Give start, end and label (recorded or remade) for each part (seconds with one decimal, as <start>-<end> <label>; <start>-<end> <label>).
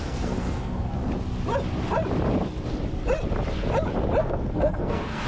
0.0-1.0 remade; 1.0-4.2 recorded; 4.2-5.3 remade